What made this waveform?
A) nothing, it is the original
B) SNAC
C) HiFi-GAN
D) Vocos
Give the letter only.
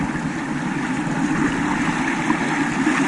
A